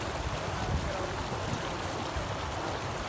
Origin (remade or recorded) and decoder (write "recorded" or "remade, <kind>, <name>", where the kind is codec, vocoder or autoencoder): recorded